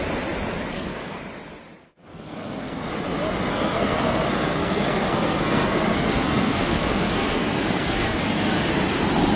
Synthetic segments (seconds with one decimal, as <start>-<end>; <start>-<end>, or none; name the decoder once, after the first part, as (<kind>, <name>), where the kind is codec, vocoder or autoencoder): 0.7-1.2 (codec, SNAC); 1.8-2.9; 3.5-8.7